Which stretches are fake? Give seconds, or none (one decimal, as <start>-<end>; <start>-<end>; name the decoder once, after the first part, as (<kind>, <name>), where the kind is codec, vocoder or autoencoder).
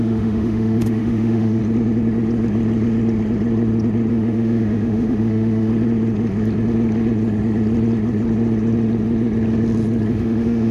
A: 0.0-1.6 (autoencoder, DAC-VAE); 4.1-5.7; 10.1-10.7